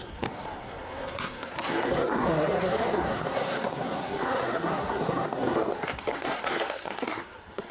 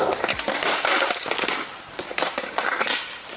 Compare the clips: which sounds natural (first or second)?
second